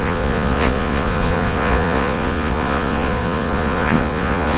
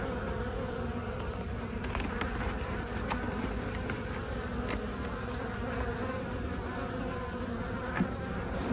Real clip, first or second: second